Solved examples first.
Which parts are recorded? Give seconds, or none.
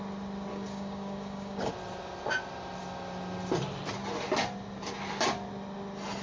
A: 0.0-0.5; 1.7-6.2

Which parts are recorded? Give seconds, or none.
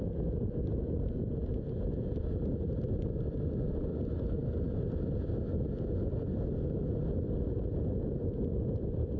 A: 0.0-9.2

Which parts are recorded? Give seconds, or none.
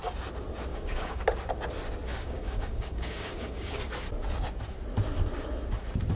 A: 0.0-0.7; 1.2-2.1; 3.8-6.2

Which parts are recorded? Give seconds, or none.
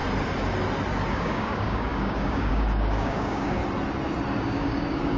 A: 0.0-1.1; 3.6-4.4